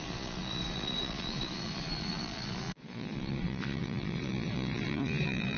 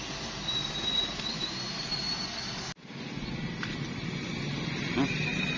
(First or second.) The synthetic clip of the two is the first